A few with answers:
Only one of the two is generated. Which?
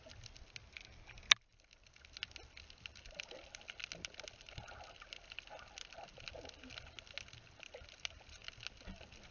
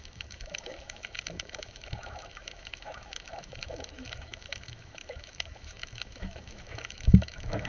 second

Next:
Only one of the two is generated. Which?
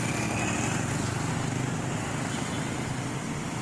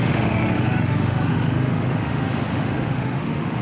second